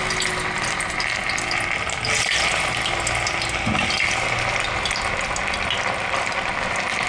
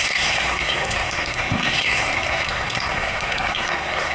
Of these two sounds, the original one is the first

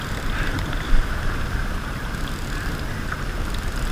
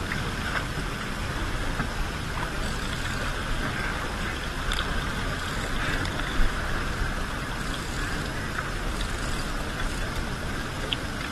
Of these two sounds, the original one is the second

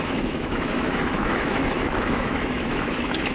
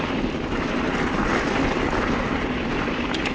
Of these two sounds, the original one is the second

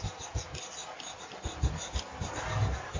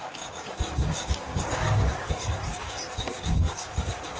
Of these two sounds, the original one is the first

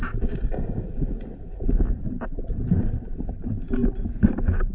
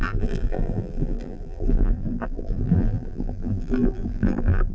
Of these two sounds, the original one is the first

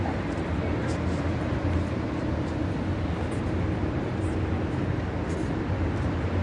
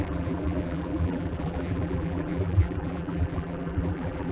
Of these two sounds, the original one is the first